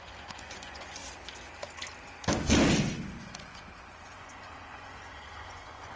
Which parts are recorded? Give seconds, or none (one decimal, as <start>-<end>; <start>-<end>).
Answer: 1.0-3.2